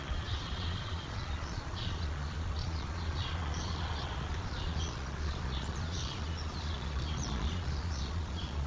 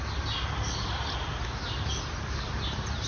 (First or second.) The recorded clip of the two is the second